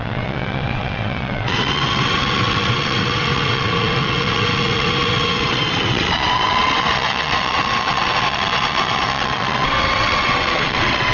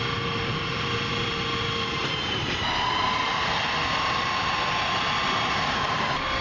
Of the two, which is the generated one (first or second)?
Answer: first